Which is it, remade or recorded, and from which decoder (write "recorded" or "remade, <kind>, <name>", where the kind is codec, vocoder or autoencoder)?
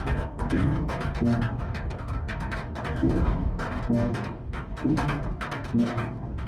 remade, codec, DAC